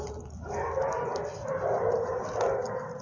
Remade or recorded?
recorded